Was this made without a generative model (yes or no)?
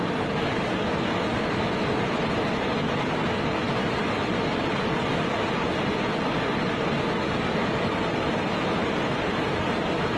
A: yes